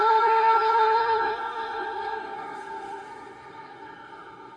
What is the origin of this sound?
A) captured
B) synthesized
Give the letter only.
B